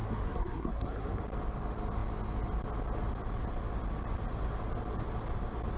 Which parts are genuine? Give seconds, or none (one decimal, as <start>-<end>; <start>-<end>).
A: 1.2-5.8